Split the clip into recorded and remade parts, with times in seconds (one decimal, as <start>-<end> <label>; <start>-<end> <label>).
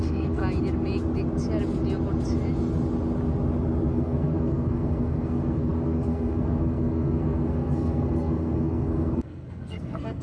0.0-0.4 remade; 0.4-3.9 recorded; 3.9-10.2 remade